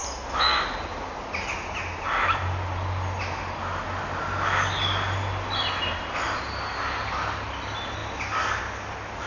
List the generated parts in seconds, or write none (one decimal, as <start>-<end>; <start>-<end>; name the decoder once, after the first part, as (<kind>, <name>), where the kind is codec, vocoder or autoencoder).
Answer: none